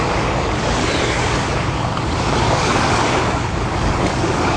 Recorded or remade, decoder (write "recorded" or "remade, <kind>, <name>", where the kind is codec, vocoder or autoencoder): remade, codec, DAC